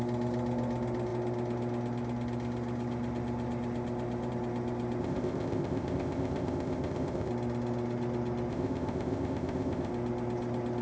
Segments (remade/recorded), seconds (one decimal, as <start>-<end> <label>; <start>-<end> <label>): 0.0-5.0 recorded; 5.0-7.3 remade; 7.3-8.5 recorded; 8.5-9.9 remade; 9.9-10.8 recorded

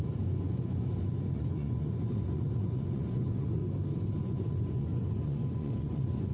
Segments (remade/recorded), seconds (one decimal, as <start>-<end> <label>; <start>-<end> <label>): 0.0-3.6 remade; 3.6-4.1 recorded; 4.1-6.3 remade

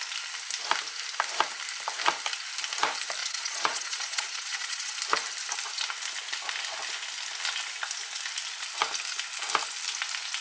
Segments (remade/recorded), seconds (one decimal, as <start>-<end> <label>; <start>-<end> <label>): 0.0-3.2 recorded; 3.2-4.9 remade; 4.9-10.4 recorded

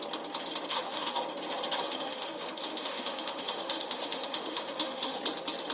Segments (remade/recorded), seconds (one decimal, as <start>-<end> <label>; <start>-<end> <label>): 0.0-0.7 recorded; 0.7-1.2 remade; 1.2-1.8 recorded; 1.8-5.2 remade; 5.2-5.7 recorded